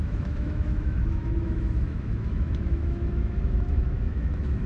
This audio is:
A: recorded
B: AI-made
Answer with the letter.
B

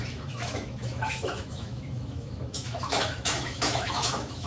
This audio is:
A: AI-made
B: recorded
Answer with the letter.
A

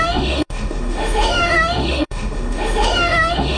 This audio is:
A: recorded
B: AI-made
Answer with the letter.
B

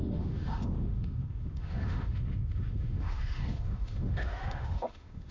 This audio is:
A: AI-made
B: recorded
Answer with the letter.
A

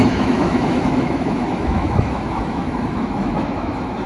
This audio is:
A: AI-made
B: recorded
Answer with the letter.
A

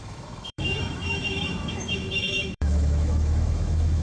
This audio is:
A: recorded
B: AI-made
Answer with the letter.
B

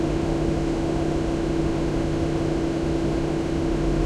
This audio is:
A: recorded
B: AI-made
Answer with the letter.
B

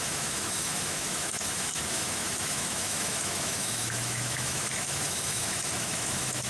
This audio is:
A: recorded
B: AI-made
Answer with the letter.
B